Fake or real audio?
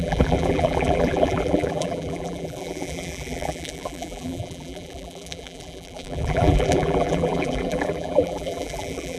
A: fake